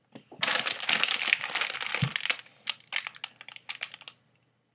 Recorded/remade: recorded